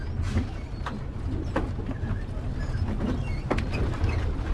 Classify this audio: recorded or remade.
recorded